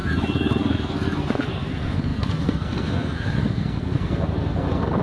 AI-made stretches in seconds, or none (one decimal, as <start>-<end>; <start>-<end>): 0.0-5.0